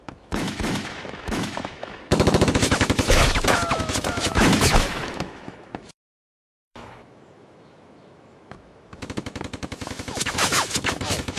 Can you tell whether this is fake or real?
fake